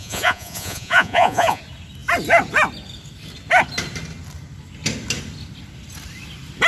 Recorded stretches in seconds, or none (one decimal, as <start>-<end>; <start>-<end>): 1.6-6.7